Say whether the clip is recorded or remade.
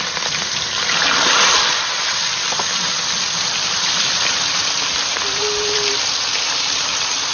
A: remade